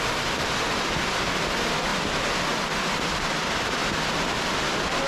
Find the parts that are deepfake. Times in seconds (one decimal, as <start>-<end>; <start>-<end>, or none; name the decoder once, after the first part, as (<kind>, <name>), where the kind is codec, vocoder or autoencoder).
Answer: none